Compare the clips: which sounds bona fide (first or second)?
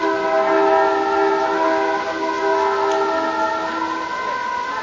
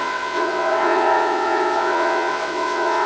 first